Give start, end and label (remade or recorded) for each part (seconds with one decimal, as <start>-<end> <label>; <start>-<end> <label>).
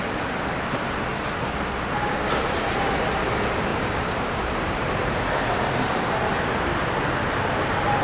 0.0-3.7 recorded; 3.7-6.5 remade; 6.5-8.0 recorded